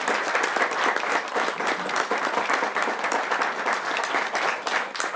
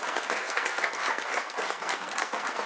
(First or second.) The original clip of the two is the first